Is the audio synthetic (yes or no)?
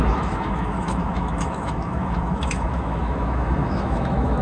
yes